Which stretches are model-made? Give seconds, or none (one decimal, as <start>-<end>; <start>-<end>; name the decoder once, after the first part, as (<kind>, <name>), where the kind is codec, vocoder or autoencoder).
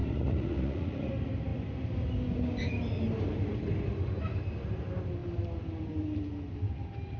0.0-1.1 (vocoder, Vocos)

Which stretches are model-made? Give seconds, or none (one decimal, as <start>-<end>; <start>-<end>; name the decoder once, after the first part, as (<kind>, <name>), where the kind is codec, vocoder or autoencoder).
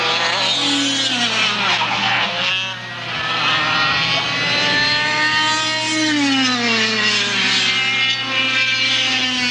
2.0-2.5 (codec, SNAC)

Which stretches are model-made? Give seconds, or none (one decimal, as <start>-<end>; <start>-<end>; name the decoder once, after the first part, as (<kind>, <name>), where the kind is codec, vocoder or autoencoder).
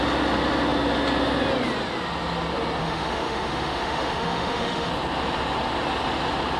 2.8-4.9 (autoencoder, DAC-VAE)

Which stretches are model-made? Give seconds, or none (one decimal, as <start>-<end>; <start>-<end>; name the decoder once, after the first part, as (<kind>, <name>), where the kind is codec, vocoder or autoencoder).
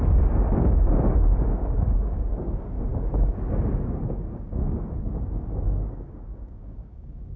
0.0-7.4 (codec, DAC)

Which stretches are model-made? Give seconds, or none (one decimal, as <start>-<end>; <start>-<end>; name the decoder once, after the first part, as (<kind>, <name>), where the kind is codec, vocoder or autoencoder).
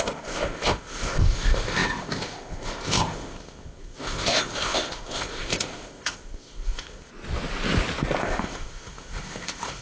0.0-7.1 (codec, ZipCodec); 8.2-9.8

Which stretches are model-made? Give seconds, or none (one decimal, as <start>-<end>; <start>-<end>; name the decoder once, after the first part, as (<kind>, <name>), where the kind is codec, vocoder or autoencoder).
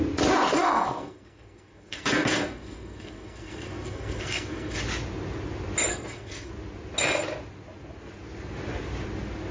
0.5-4.8 (codec, SNAC); 5.9-6.5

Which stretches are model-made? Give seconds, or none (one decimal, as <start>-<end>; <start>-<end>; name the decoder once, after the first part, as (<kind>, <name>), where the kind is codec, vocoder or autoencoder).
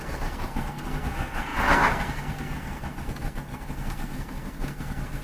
0.0-5.2 (codec, SNAC)